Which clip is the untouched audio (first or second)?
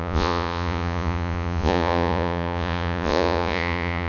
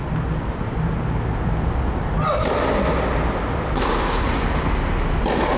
second